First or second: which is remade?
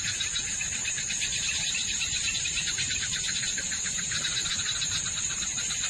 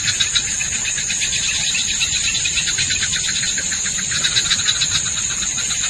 first